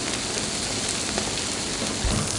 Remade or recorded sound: recorded